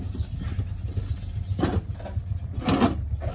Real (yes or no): yes